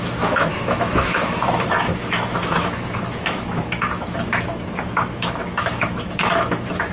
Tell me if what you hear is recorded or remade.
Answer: remade